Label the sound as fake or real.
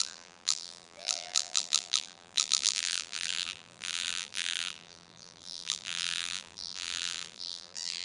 fake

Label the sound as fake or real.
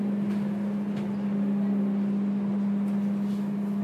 real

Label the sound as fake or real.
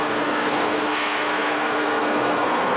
fake